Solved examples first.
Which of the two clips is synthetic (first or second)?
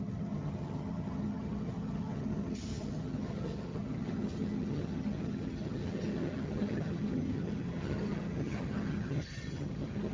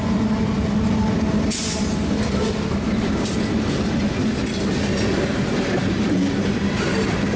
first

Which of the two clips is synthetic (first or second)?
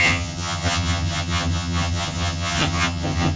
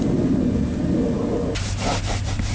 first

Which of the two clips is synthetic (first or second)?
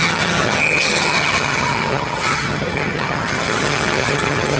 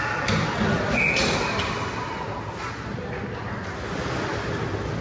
first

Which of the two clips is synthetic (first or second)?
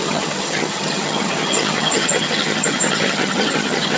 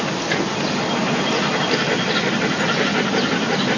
first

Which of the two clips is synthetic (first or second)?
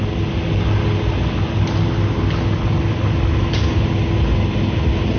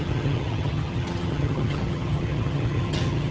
second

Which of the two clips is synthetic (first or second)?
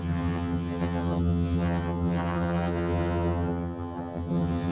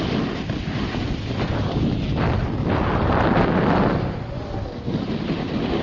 first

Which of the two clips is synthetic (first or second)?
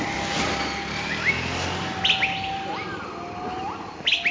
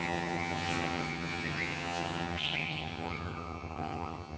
second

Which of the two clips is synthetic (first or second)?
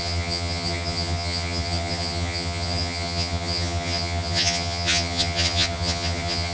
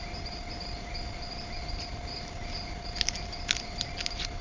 first